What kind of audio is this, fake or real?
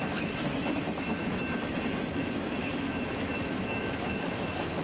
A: fake